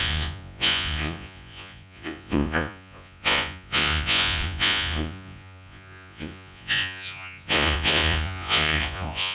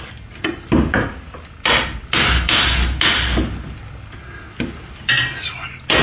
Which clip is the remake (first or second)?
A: first